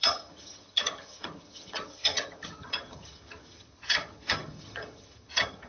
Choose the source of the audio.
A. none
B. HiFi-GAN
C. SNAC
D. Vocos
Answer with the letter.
B